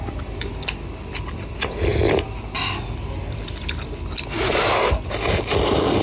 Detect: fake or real real